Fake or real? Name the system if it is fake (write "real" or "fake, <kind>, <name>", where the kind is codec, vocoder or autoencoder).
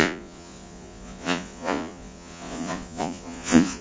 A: fake, vocoder, Vocos